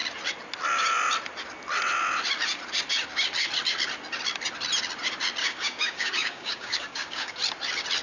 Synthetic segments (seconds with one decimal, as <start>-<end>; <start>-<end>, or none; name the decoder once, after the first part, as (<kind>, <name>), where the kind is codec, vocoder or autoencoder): 5.4-7.3 (codec, DAC)